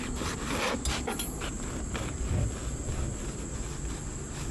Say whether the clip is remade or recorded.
recorded